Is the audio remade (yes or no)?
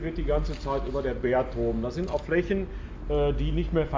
no